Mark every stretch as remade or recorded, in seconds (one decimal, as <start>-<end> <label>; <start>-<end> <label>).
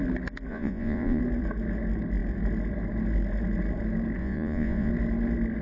0.0-0.5 recorded; 0.5-1.2 remade; 1.2-4.2 recorded; 4.2-4.9 remade; 4.9-5.6 recorded